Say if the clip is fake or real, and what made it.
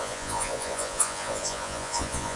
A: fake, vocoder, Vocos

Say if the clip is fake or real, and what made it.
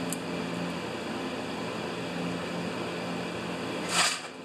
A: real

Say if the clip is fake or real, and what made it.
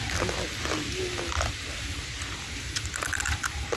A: real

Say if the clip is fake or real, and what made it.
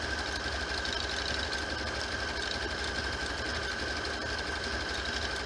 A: real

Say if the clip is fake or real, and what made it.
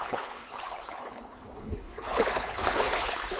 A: fake, codec, HILCodec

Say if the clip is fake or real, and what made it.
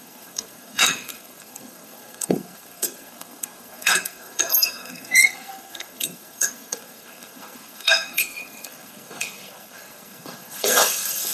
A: fake, codec, SNAC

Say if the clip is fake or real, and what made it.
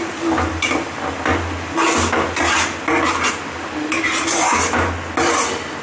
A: real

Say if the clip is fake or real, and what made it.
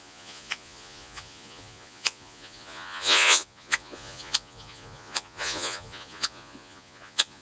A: fake, vocoder, Vocos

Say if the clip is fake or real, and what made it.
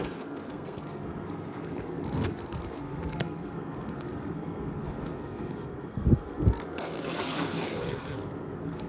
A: fake, codec, SNAC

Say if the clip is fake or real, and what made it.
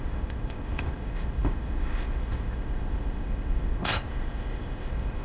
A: fake, codec, ZipCodec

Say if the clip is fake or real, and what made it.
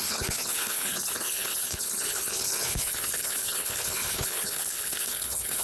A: fake, codec, HILCodec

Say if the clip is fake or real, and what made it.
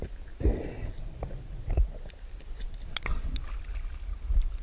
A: real